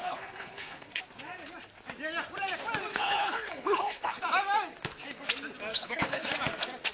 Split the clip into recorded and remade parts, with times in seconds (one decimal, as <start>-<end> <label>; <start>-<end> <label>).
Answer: 0.0-1.0 remade; 1.0-2.9 recorded; 2.9-4.2 remade; 4.2-5.7 recorded; 5.7-6.3 remade; 6.3-6.9 recorded